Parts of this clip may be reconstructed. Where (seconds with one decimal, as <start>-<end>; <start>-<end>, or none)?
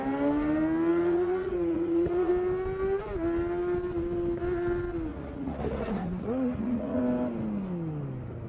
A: 0.9-2.3; 5.1-7.0